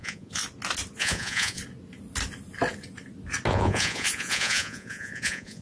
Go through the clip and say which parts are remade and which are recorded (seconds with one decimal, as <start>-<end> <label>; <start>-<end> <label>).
0.0-0.4 remade; 0.4-1.0 recorded; 1.0-1.6 remade; 1.6-3.5 recorded; 3.5-5.6 remade